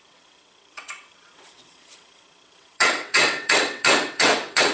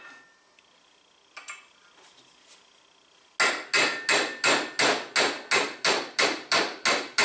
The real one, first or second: second